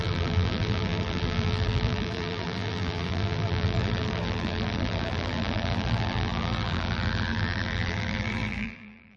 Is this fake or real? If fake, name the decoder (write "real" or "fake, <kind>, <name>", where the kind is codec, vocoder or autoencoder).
fake, vocoder, BigVGAN v2